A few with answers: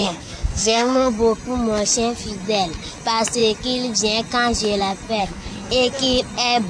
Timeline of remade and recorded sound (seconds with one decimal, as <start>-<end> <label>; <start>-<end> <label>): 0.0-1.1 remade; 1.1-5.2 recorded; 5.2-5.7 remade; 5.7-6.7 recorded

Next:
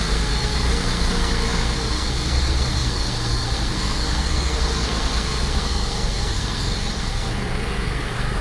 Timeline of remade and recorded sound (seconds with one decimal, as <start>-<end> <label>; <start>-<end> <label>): 0.0-8.4 remade

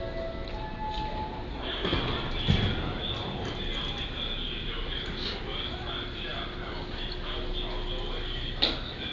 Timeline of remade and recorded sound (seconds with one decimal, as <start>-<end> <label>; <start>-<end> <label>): 0.0-1.5 recorded; 1.5-2.0 remade; 2.0-9.1 recorded